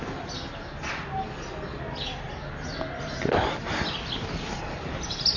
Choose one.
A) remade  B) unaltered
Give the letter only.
B